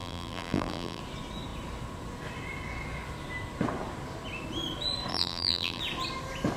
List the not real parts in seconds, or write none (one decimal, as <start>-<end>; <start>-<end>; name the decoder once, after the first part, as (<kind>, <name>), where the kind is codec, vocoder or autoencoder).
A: 0.0-1.0 (vocoder, BigVGAN v2); 5.1-5.8